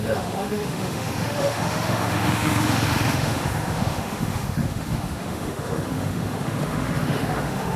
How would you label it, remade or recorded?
remade